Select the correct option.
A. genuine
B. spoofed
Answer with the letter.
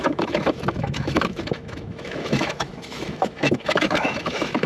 B